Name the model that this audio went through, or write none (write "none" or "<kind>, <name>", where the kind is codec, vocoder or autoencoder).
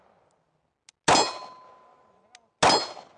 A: none